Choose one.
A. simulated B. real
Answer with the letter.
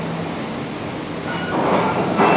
B